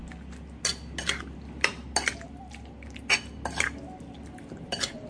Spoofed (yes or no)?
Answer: no